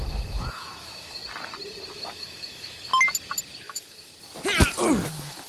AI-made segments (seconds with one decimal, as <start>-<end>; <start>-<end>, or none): 0.0-1.2; 1.9-2.9; 3.6-4.1; 5.1-5.5